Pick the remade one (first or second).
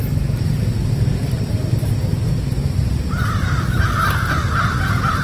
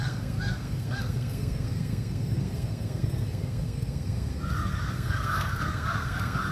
second